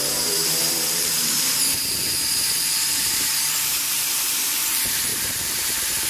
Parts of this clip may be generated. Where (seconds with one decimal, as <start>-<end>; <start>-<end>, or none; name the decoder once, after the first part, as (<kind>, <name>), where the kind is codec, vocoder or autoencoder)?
0.0-1.6 (vocoder, BigVGAN v2); 2.6-6.1